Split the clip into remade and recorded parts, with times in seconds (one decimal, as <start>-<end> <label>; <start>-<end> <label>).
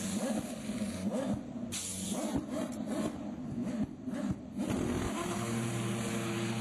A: 0.0-1.9 recorded; 1.9-3.3 remade; 3.3-6.6 recorded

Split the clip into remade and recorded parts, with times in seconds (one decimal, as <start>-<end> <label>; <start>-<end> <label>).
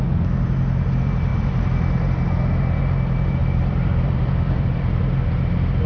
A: 0.0-3.4 recorded; 3.4-5.0 remade; 5.0-5.9 recorded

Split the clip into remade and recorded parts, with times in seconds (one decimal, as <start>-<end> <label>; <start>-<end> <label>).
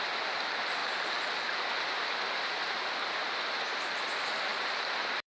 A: 0.0-4.5 recorded; 4.5-5.4 remade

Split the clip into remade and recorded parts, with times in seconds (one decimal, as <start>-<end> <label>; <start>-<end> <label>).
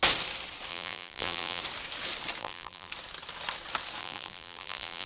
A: 0.0-0.7 recorded; 0.7-1.6 remade; 1.6-2.4 recorded; 2.4-2.9 remade; 2.9-4.0 recorded; 4.0-5.1 remade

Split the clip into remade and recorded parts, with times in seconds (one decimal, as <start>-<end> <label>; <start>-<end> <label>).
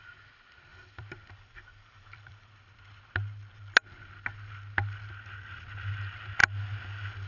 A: 0.0-0.7 recorded; 0.7-2.5 remade; 2.5-7.3 recorded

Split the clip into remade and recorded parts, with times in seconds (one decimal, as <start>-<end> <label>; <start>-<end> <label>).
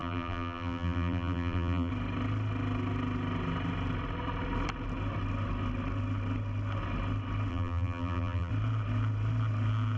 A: 0.0-1.9 remade; 1.9-7.5 recorded; 7.5-8.5 remade; 8.5-10.0 recorded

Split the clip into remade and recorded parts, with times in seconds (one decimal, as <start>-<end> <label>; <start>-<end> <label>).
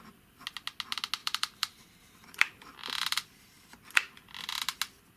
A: 0.0-1.2 recorded; 1.2-4.3 remade; 4.3-5.2 recorded